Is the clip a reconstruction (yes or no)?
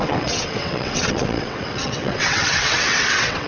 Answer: yes